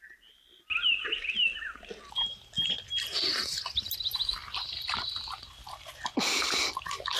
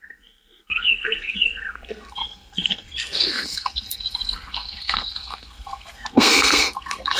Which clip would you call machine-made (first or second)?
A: second